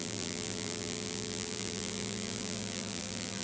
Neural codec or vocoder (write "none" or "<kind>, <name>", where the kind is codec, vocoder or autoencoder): vocoder, BigVGAN v2